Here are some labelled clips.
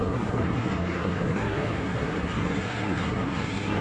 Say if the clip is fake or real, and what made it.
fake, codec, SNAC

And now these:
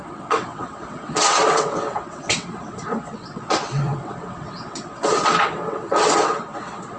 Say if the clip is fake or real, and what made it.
fake, vocoder, WaveNeXt